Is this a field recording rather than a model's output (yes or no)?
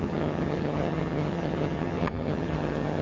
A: no